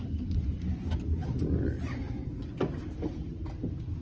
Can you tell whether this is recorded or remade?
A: recorded